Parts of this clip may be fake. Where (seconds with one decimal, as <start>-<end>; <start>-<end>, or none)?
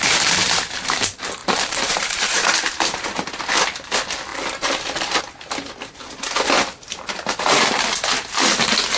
1.4-2.5; 4.3-5.2